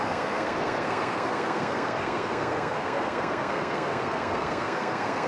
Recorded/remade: remade